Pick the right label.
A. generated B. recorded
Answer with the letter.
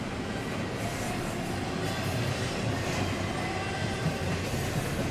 B